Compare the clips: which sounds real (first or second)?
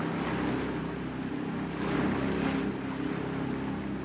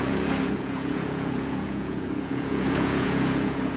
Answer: first